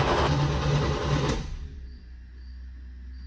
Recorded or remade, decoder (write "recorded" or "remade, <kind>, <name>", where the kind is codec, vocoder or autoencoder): recorded